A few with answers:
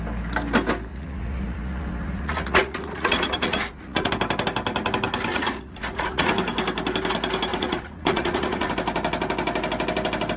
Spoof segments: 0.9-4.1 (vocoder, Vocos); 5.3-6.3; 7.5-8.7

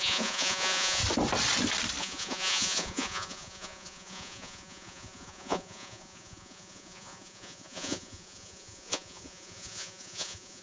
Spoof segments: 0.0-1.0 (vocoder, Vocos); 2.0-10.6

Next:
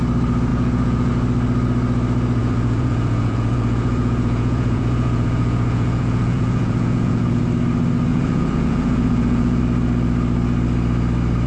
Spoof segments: 0.5-1.1 (vocoder, Vocos); 2.4-7.4; 8.1-9.6

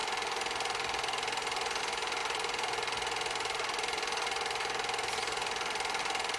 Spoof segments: none

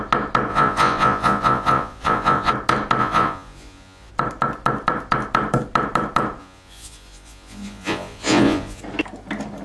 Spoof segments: 0.5-2.5 (vocoder, Vocos); 3.0-4.1; 6.4-8.8

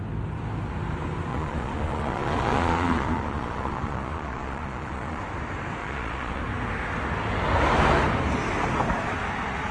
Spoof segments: 1.3-5.2 (vocoder, Vocos); 5.8-6.4